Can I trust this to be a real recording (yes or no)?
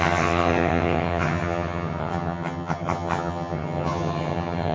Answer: no